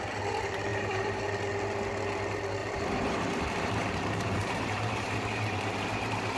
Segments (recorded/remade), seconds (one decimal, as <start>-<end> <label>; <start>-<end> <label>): 0.0-0.7 recorded; 0.7-1.2 remade; 1.2-2.6 recorded; 2.6-6.4 remade